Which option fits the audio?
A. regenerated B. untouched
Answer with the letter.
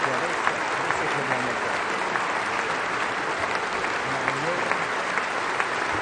B